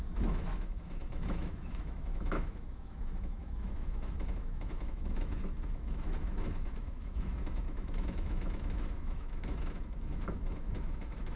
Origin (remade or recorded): remade